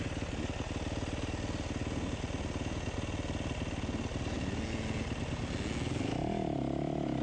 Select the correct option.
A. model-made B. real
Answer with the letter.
B